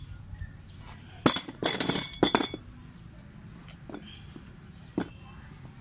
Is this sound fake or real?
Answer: real